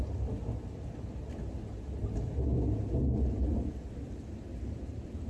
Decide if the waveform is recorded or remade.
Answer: recorded